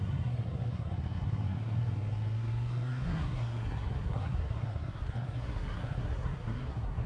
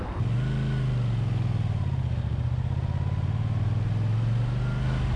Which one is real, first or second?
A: second